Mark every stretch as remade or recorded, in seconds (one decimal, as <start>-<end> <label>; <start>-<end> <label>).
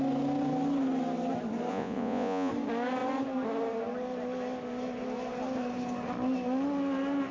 0.0-1.7 recorded; 1.7-2.5 remade; 2.5-7.3 recorded